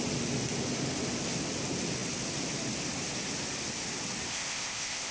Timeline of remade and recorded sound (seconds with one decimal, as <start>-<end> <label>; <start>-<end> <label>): 0.0-4.3 recorded; 4.3-5.1 remade